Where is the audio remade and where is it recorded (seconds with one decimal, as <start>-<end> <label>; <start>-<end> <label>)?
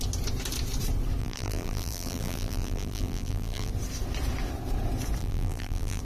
0.0-1.2 recorded; 1.2-3.7 remade; 3.7-5.2 recorded; 5.2-6.0 remade